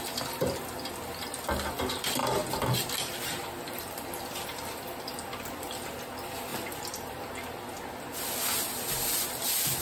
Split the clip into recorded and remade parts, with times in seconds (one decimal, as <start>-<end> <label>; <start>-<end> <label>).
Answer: 0.0-2.2 recorded; 2.2-6.0 remade; 6.0-6.5 recorded; 6.5-7.3 remade; 7.3-9.8 recorded